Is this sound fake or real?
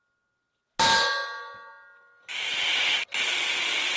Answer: real